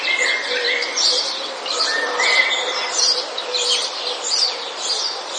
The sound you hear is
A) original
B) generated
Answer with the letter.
B